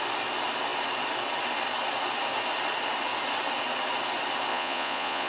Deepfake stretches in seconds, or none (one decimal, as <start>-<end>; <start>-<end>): 4.5-5.3